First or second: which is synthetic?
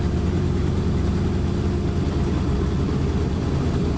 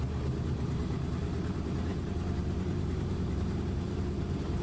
second